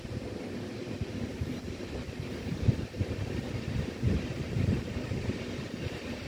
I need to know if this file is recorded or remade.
remade